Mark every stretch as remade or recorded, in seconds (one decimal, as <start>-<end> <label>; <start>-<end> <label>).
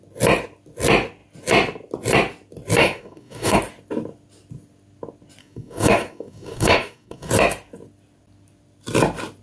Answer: 0.0-2.8 recorded; 2.8-3.6 remade; 3.6-5.4 recorded; 5.4-7.3 remade; 7.3-9.4 recorded